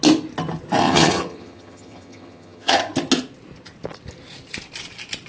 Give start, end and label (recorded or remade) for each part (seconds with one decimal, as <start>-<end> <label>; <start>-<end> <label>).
0.0-0.8 recorded; 0.8-2.8 remade; 2.8-5.3 recorded